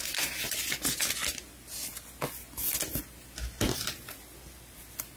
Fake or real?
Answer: real